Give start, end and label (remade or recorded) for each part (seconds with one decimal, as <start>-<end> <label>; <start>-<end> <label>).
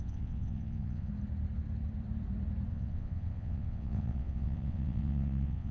0.0-1.1 remade; 1.1-2.7 recorded; 2.7-5.7 remade